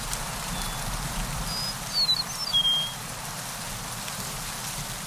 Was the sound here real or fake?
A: real